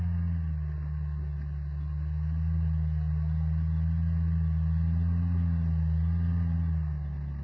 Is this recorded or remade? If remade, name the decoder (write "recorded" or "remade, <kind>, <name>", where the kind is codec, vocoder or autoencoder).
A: recorded